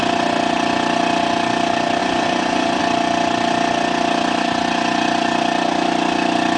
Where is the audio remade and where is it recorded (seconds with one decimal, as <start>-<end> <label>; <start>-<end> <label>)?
0.0-2.0 recorded; 2.0-2.8 remade; 2.8-6.6 recorded